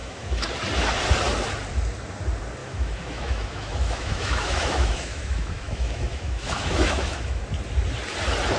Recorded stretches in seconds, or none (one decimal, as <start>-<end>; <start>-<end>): 0.5-2.6; 7.4-8.6